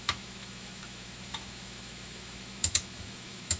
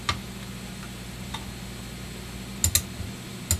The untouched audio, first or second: second